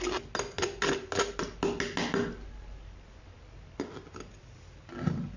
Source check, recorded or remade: recorded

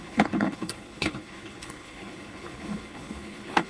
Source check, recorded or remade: remade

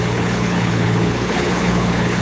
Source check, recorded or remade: remade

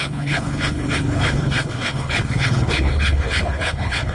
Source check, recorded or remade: remade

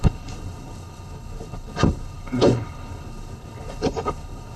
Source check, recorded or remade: remade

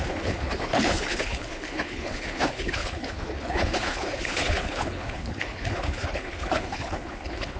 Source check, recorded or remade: remade